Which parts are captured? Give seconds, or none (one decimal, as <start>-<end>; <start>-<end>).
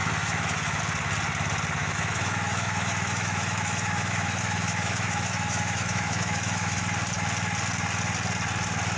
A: 0.8-1.8; 6.8-9.0